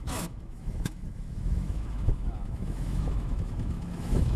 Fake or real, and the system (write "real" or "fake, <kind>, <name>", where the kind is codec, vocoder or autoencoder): fake, autoencoder, DAC-VAE